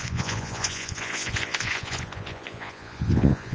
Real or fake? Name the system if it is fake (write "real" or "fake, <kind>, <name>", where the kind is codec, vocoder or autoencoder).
fake, vocoder, Vocos